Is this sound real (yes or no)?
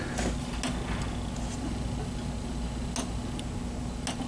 yes